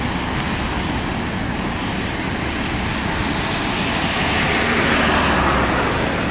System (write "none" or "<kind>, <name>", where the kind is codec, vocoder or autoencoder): none